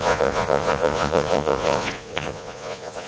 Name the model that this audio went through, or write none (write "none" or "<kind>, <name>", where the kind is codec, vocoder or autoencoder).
vocoder, Vocos